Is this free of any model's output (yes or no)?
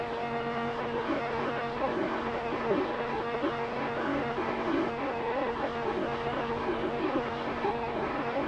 no